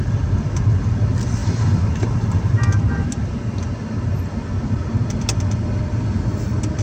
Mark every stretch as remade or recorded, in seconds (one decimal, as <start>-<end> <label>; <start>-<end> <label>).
0.0-1.4 recorded; 1.4-2.6 remade; 2.6-6.8 recorded